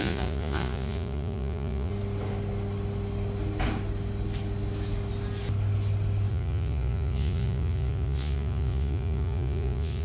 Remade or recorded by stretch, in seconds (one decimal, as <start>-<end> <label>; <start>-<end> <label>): 0.0-1.9 remade; 1.9-6.3 recorded; 6.3-10.0 remade